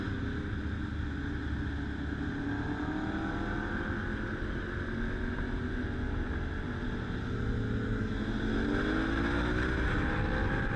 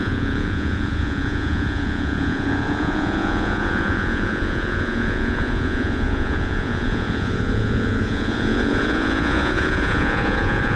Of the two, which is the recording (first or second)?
first